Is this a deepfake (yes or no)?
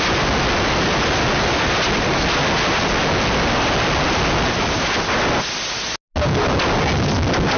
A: no